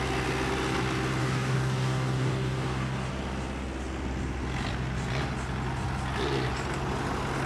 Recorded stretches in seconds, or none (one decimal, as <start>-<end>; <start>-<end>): 0.0-1.2; 3.1-7.5